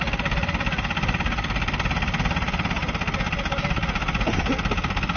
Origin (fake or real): real